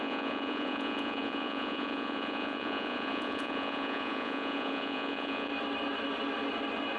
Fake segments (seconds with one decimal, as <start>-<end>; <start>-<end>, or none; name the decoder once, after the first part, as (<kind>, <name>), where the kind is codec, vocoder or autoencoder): 0.0-5.5 (vocoder, Vocos)